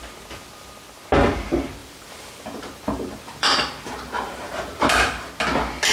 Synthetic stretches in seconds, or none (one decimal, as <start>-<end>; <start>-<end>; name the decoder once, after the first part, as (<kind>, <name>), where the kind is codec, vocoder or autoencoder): 1.8-5.3 (vocoder, BigVGAN v2)